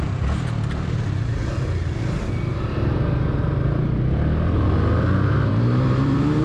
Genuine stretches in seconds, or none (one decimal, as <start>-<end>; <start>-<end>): 1.4-5.0